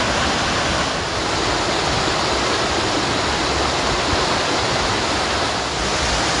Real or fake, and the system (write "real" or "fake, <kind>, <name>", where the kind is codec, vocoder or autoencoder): real